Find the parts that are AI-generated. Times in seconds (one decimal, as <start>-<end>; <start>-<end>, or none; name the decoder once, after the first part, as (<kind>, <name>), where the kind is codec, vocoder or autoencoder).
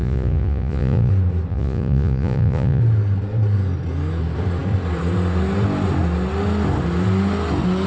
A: 0.0-1.1 (vocoder, Vocos); 1.5-2.8